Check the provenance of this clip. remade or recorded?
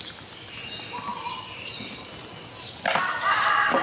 recorded